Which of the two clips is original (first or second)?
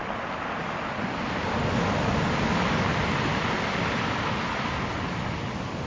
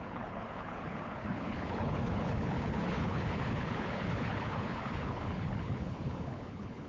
first